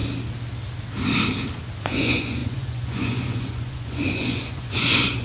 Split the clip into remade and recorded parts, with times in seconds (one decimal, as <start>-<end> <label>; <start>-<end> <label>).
0.0-1.8 recorded; 1.8-5.2 remade